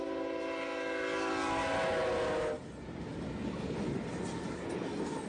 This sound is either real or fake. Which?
real